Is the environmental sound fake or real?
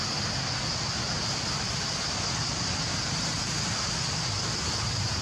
real